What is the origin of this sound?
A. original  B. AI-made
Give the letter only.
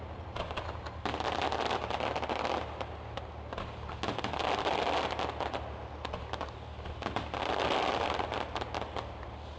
A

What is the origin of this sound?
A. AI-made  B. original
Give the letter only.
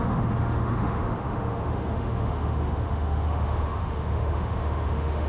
A